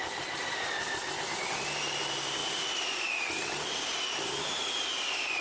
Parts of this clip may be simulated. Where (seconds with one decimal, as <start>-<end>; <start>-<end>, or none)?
none